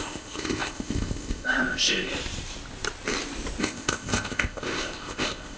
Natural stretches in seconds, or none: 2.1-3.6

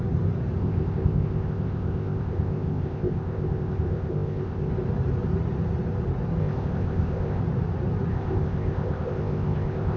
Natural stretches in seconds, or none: 0.0-0.6; 4.7-6.4; 7.4-8.1

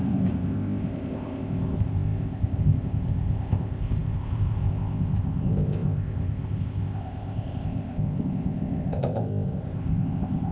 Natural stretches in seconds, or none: none

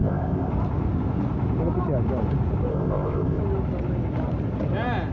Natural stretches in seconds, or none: 0.5-2.7; 3.4-5.1

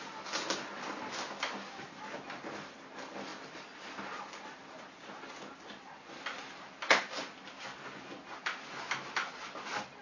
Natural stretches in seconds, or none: 0.0-10.0

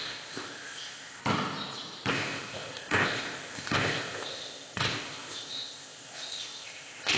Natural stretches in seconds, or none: 1.2-2.1

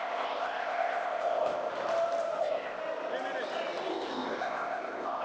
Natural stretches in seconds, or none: 1.7-2.4; 2.8-3.9